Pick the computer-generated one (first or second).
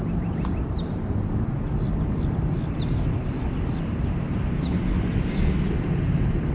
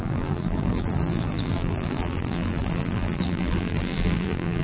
second